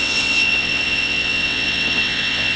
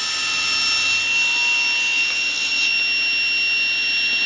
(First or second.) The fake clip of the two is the first